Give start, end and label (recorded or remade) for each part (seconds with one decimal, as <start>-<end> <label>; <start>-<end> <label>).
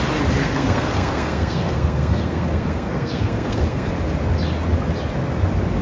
0.0-0.4 recorded; 0.4-3.9 remade; 3.9-5.8 recorded